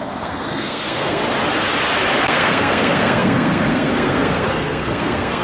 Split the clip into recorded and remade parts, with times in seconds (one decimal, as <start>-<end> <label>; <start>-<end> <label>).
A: 0.0-1.2 remade; 1.2-2.2 recorded; 2.2-5.4 remade